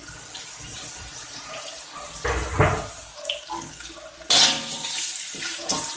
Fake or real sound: real